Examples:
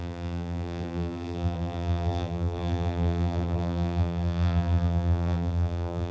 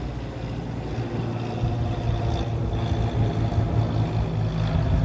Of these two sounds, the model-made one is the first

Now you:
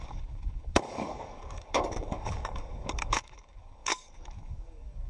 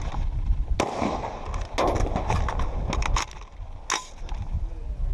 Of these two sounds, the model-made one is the first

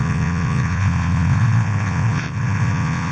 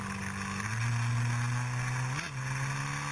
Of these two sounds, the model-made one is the first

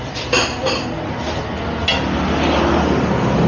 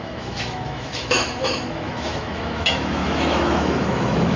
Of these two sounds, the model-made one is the second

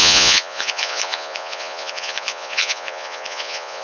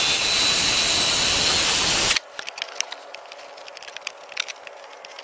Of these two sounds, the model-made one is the first